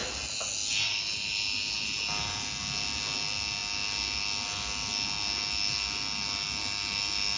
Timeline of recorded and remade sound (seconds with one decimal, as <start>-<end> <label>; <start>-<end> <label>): 0.0-7.4 recorded